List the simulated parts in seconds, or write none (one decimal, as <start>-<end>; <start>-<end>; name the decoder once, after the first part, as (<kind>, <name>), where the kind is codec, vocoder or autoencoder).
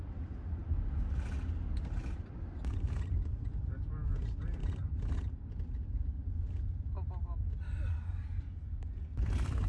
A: none